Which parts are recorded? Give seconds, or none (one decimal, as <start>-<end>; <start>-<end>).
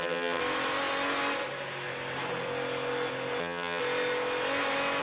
0.4-3.4; 3.8-5.0